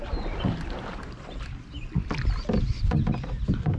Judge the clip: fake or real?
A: real